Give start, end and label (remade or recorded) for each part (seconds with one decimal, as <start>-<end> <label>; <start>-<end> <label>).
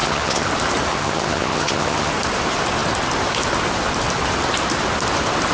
0.0-0.5 remade; 0.5-0.9 recorded; 0.9-2.1 remade; 2.1-5.5 recorded